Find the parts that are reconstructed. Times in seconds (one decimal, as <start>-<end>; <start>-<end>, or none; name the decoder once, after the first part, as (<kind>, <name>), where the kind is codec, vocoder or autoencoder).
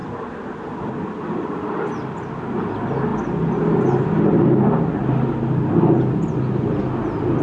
none